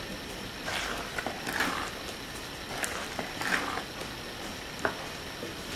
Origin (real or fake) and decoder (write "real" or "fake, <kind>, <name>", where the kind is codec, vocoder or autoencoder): real